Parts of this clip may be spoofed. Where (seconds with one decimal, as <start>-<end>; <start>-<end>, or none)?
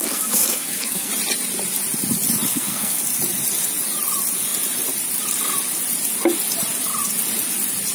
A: 0.0-1.1; 2.5-3.0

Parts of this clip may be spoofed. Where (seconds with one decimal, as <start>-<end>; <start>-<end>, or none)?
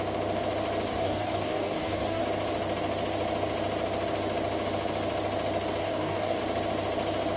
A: 0.9-2.2; 5.8-6.4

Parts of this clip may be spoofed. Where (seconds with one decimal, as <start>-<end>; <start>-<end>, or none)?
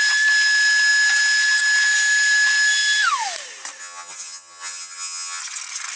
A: 3.8-5.4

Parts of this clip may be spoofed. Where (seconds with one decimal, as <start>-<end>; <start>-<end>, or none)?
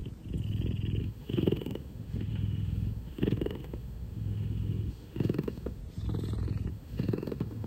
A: 1.0-5.8; 6.7-7.7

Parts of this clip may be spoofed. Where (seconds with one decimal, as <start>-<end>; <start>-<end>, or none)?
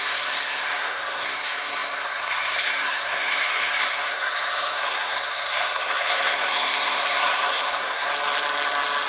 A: 0.0-8.1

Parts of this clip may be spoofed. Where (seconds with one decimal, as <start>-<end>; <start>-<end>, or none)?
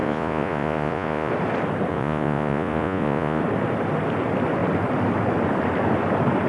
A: 0.0-1.3; 1.9-3.4